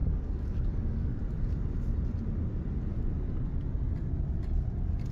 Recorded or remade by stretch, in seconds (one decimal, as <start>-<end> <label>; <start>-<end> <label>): 0.0-1.2 remade; 1.2-5.1 recorded